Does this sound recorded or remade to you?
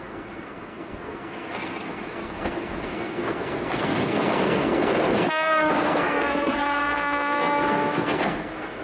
remade